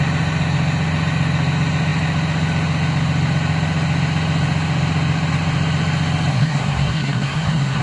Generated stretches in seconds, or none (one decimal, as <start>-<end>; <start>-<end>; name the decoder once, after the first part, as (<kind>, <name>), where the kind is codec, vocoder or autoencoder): 6.3-7.8 (codec, SNAC)